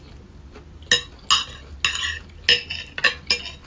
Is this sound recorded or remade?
recorded